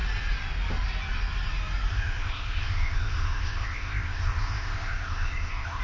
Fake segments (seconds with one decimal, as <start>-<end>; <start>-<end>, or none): 1.9-5.8